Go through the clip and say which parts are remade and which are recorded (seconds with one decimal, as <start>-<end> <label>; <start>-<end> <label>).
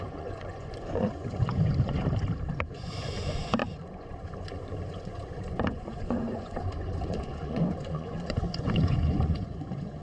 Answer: 0.0-2.0 remade; 2.0-2.5 recorded; 2.5-10.0 remade